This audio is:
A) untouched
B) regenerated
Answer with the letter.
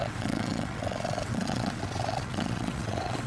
B